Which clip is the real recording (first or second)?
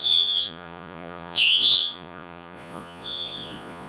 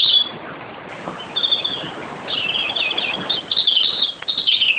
second